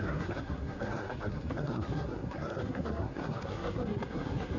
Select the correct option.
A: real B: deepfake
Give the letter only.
B